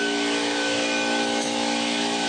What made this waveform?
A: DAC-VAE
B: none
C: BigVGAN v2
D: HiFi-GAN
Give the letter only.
A